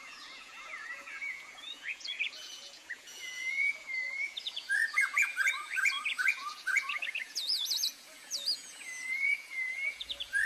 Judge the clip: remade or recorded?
remade